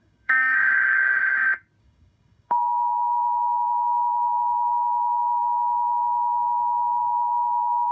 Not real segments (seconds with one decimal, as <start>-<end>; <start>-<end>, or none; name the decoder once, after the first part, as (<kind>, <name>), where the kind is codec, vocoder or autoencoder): 0.0-1.2 (codec, DAC); 1.8-5.4; 7.0-7.9